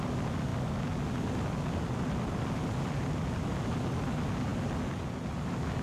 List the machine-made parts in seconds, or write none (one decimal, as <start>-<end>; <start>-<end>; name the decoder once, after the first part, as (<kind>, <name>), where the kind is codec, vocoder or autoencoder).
none